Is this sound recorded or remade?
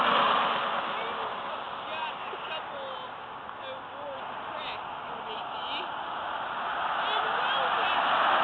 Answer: recorded